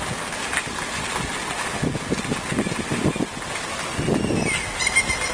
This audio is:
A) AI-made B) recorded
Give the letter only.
B